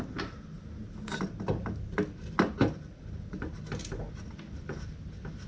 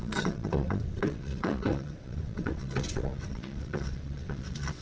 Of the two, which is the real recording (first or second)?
first